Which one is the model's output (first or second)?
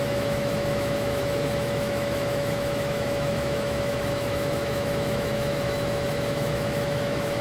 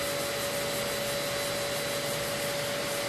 first